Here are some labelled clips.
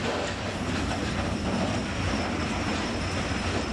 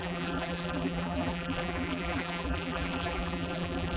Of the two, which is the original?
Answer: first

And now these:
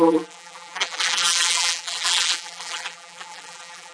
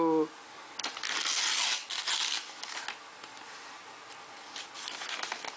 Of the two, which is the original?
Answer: second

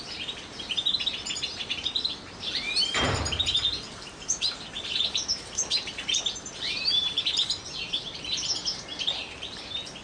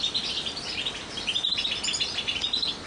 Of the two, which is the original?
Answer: second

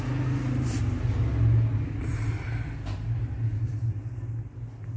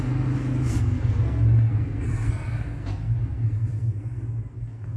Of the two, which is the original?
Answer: first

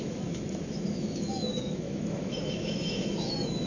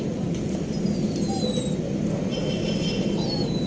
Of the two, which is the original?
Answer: second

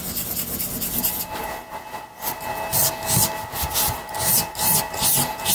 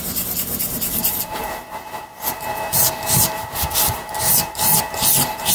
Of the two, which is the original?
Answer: first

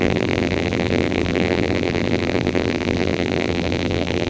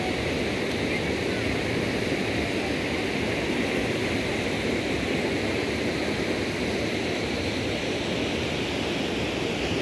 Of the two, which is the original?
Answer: second